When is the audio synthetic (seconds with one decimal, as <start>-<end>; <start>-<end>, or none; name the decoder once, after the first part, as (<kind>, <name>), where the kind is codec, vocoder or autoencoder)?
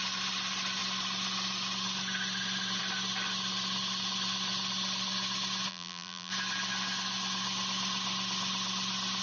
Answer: 5.7-6.3 (vocoder, BigVGAN v2)